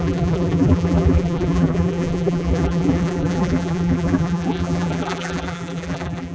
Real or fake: fake